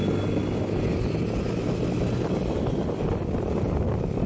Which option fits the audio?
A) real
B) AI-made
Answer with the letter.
A